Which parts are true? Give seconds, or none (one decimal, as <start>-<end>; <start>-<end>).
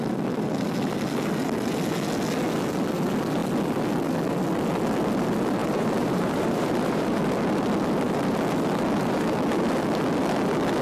0.0-5.6; 7.2-10.8